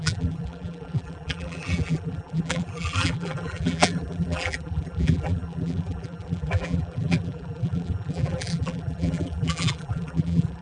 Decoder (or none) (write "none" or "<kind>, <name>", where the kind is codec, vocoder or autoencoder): vocoder, BigVGAN v2